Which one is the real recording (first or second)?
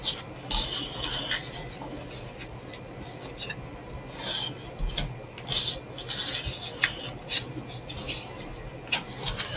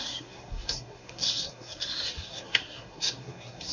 first